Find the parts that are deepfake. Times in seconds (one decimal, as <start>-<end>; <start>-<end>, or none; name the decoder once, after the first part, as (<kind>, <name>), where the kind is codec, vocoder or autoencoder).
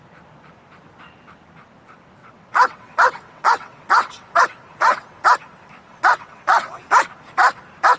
2.2-5.2 (vocoder, WaveNeXt); 5.9-6.8